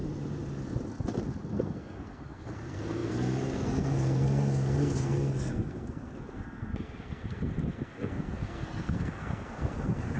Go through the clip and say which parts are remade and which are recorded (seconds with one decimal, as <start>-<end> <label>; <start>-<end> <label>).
0.0-1.5 recorded; 1.5-10.2 remade

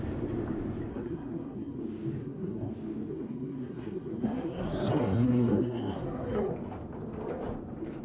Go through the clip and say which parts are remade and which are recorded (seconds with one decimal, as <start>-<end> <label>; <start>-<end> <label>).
0.0-0.9 recorded; 0.9-1.8 remade; 1.8-2.2 recorded; 2.2-2.7 remade; 2.7-3.1 recorded; 3.1-6.5 remade; 6.5-8.0 recorded